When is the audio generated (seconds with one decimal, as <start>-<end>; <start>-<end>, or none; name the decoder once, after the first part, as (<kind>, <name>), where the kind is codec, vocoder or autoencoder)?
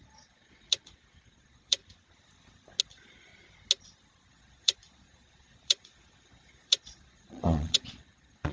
0.0-1.8 (vocoder, Vocos); 2.8-3.3; 4.3-8.5